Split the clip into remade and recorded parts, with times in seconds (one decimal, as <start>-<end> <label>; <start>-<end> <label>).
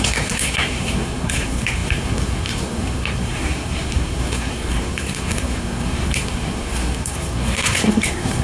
0.0-8.4 remade